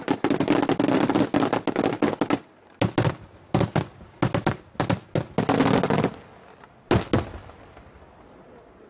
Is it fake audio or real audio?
real